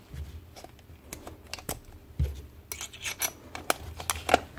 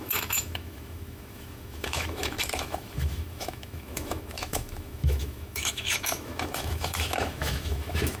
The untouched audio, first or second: first